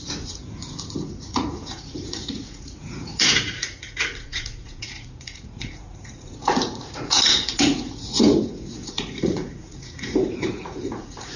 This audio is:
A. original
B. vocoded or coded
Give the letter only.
B